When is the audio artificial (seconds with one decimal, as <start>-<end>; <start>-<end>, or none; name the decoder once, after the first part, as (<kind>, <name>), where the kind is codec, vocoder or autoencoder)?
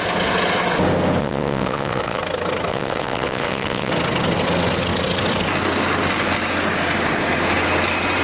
1.2-2.2 (vocoder, WaveNeXt); 2.7-3.9